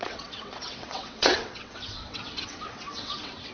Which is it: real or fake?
fake